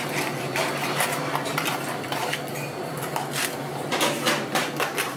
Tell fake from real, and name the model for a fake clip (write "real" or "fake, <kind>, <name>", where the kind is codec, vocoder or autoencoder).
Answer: real